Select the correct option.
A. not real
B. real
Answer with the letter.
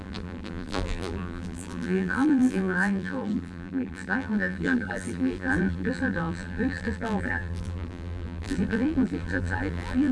A